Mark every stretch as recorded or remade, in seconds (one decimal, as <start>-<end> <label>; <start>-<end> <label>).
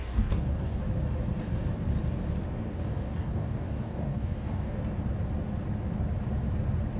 0.0-0.8 remade; 0.8-2.7 recorded; 2.7-4.8 remade; 4.8-7.0 recorded